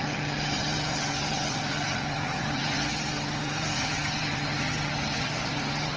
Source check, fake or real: fake